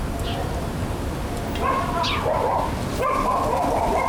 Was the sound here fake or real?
real